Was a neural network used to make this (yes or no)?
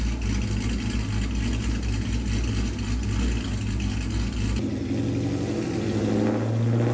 no